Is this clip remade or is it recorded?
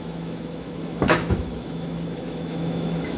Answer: remade